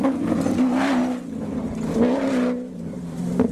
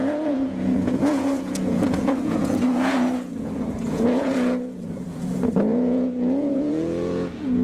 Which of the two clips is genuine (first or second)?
first